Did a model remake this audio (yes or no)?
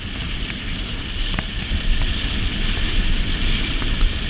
no